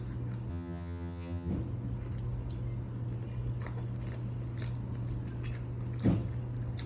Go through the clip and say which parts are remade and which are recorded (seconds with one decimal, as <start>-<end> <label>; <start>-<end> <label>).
0.0-0.5 recorded; 0.5-1.5 remade; 1.5-6.9 recorded